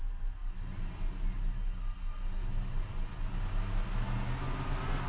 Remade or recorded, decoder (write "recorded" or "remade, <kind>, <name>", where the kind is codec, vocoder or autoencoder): recorded